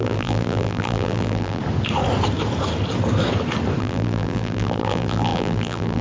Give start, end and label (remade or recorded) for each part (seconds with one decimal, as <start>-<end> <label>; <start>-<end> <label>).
0.0-1.6 remade; 1.6-3.8 recorded; 3.8-6.0 remade